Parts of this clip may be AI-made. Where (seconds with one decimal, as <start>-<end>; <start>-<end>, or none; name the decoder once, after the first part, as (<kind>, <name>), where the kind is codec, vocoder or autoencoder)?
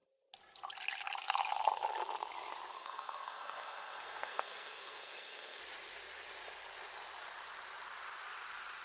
2.7-5.6 (codec, SNAC)